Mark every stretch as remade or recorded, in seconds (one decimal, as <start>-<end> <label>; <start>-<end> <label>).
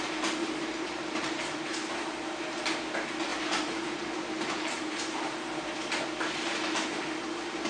0.0-0.4 recorded; 0.4-2.6 remade; 2.6-3.3 recorded; 3.3-5.7 remade; 5.7-7.7 recorded